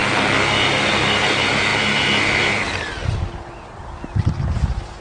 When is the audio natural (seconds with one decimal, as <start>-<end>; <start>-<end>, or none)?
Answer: 0.0-5.0